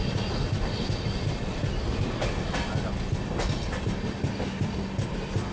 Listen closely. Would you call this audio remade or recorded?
recorded